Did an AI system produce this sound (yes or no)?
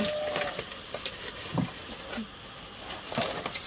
no